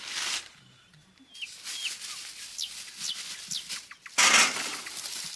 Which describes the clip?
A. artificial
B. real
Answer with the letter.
B